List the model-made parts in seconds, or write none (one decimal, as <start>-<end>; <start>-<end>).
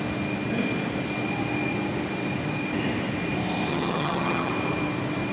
3.7-4.5